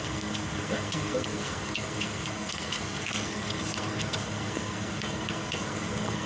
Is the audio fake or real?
fake